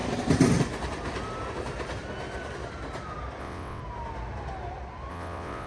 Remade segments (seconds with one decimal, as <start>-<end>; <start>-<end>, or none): 3.4-3.8; 5.1-5.7